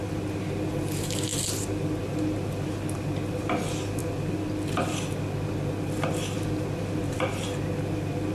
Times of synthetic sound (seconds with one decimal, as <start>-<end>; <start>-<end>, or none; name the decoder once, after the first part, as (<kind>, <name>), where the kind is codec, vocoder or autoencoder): none